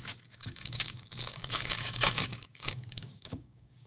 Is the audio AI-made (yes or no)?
yes